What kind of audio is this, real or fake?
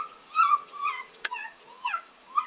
fake